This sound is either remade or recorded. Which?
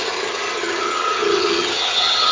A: remade